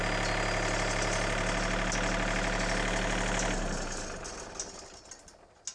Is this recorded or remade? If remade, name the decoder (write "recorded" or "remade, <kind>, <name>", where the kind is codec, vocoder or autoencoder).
recorded